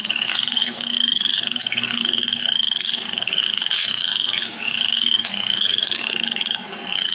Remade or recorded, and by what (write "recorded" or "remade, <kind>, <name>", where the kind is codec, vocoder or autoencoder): remade, codec, SNAC